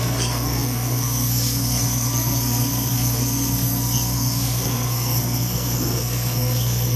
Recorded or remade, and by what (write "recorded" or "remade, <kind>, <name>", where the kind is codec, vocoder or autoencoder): remade, codec, SNAC